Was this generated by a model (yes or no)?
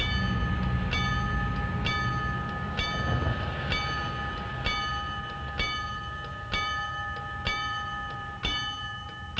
no